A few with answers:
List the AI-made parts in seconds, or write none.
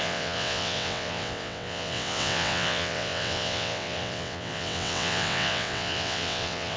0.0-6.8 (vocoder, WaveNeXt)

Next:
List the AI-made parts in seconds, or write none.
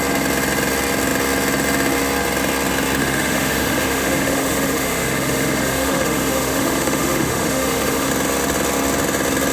3.0-8.1 (autoencoder, DAC-VAE)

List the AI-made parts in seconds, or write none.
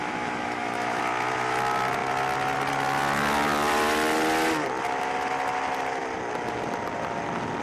0.0-1.0 (autoencoder, DAC-VAE)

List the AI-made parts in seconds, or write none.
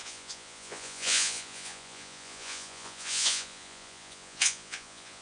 0.0-5.2 (vocoder, Vocos)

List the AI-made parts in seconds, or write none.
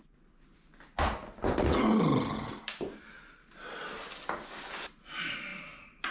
1.2-4.9 (vocoder, BigVGAN v2)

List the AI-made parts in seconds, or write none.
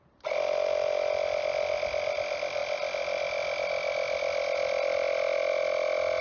none